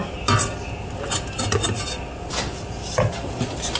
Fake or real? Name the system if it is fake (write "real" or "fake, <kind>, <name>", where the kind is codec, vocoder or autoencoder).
real